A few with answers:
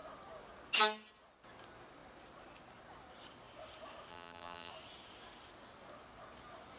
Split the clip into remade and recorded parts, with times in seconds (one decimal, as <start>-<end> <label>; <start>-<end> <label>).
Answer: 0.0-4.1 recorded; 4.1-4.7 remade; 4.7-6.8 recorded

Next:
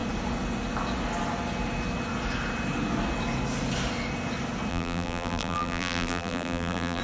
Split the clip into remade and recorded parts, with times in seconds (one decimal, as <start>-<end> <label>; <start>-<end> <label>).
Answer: 0.0-4.7 recorded; 4.7-7.0 remade

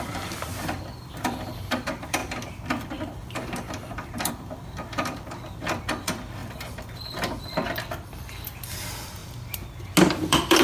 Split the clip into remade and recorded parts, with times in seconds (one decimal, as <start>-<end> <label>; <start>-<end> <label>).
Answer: 0.0-9.2 remade; 9.2-10.0 recorded; 10.0-10.6 remade